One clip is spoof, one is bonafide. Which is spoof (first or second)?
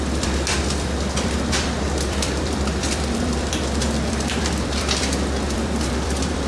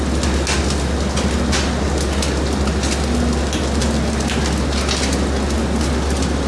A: first